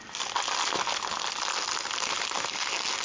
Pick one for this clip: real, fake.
real